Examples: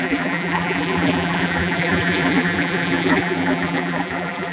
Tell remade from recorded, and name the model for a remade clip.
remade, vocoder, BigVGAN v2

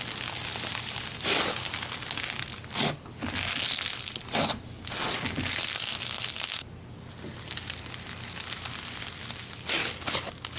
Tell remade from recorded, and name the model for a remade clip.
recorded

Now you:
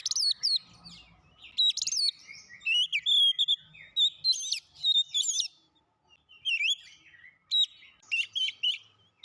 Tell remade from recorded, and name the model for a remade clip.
recorded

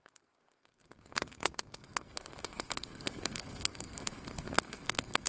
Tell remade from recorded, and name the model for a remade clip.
remade, codec, SNAC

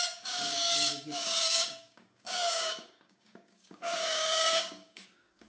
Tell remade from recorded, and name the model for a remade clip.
remade, codec, DAC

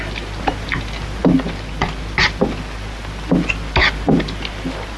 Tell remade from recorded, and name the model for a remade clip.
recorded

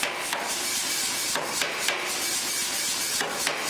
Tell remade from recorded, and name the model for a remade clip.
recorded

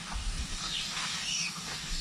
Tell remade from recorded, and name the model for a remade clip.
remade, codec, DAC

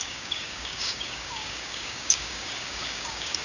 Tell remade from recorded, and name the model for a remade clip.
remade, codec, DAC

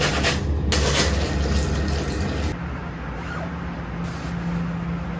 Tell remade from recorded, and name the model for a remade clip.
recorded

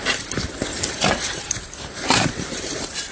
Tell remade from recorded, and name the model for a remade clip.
remade, vocoder, BigVGAN v2